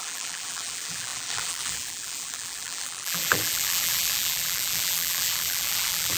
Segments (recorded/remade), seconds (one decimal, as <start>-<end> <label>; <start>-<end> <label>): 0.0-6.2 remade